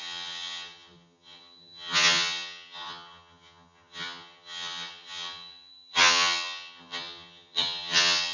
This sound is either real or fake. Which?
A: fake